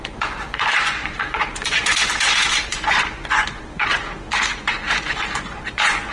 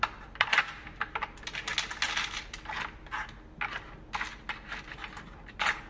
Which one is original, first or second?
second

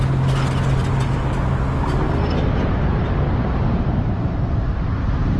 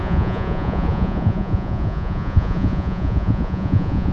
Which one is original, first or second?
first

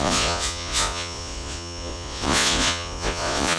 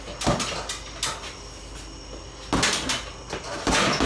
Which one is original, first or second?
second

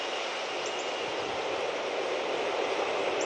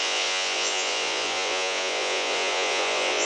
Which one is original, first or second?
first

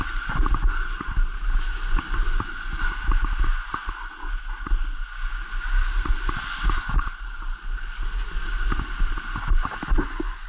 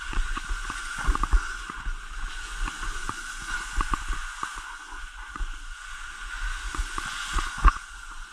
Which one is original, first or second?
first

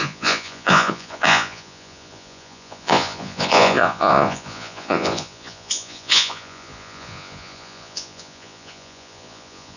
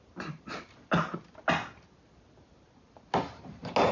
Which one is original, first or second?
second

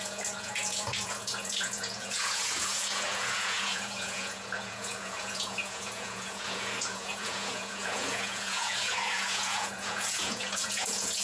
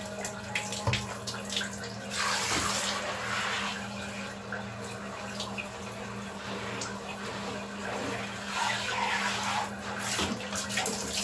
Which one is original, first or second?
second